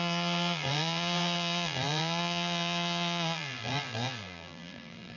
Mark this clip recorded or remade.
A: remade